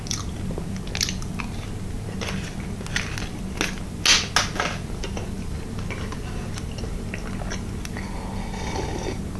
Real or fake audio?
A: real